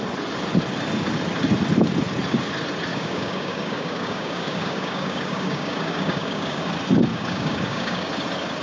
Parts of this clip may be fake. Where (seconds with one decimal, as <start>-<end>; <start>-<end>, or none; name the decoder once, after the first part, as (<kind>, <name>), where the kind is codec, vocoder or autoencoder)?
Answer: 2.9-6.6 (codec, DAC); 7.1-8.1